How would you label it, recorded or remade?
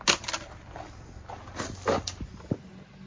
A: recorded